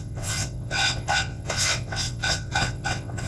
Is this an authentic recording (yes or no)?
no